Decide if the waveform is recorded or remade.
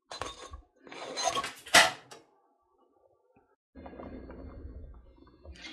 recorded